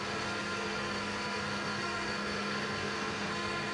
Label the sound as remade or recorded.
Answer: remade